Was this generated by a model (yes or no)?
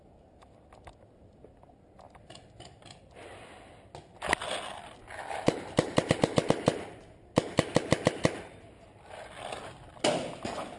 no